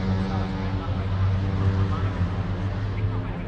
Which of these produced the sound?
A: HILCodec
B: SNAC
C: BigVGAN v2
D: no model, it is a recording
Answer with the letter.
D